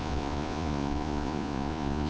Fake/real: fake